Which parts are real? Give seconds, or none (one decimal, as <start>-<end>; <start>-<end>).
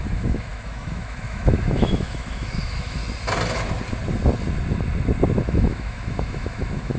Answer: 3.0-5.5